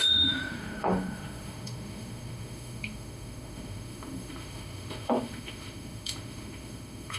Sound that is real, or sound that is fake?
fake